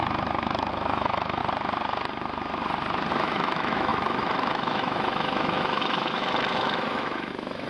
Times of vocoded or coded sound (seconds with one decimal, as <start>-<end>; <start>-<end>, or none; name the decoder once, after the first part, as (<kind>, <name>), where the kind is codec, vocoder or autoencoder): 0.7-1.4 (autoencoder, DAC-VAE); 3.1-7.7